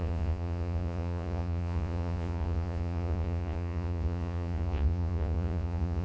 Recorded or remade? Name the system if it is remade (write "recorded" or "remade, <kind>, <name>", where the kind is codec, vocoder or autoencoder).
remade, vocoder, Vocos